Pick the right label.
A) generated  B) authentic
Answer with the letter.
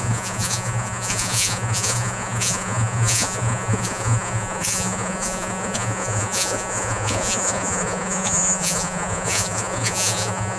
A